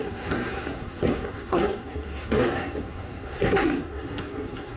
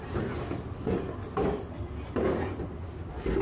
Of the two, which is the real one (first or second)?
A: second